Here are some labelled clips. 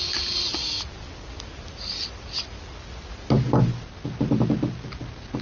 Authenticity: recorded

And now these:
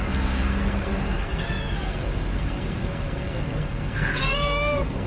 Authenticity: remade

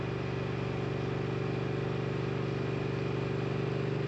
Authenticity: recorded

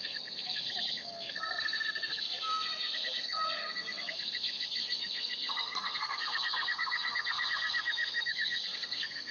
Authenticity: remade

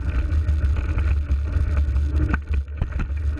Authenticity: recorded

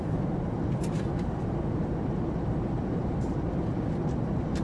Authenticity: recorded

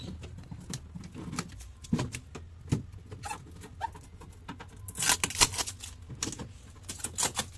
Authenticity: recorded